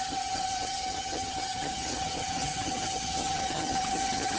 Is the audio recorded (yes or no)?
no